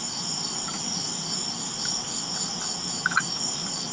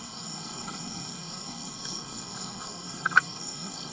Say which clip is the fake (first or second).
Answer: second